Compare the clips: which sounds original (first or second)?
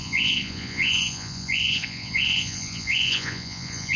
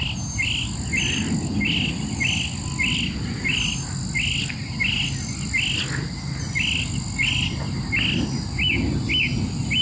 second